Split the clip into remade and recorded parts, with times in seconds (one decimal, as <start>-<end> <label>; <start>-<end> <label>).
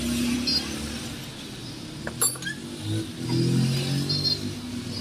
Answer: 0.0-5.0 recorded